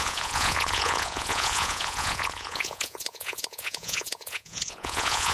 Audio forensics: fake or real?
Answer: fake